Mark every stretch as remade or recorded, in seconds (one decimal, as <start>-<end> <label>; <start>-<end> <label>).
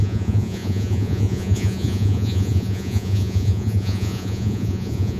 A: 0.0-5.2 remade